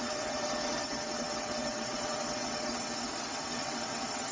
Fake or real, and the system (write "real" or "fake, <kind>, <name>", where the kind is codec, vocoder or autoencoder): fake, vocoder, WaveNeXt